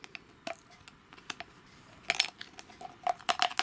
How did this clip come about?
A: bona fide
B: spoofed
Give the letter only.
A